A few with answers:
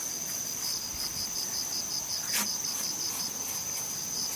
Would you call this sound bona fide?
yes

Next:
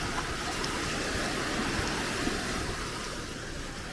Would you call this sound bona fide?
yes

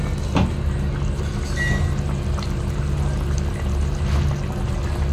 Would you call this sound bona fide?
yes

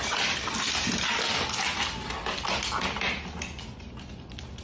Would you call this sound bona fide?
yes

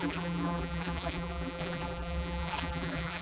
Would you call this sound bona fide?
no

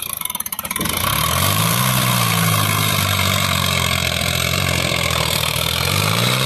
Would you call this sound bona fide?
no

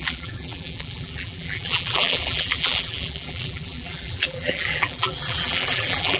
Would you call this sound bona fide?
no